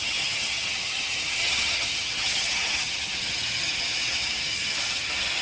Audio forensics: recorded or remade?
remade